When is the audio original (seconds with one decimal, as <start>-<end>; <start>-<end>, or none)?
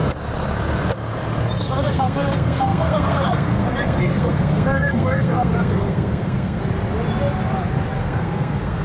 0.0-1.6; 6.6-8.0